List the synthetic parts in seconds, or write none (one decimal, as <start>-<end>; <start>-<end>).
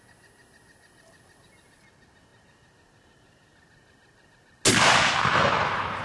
none